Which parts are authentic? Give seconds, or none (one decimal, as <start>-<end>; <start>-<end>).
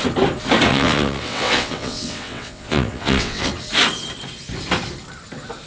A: 0.0-0.7; 3.5-5.7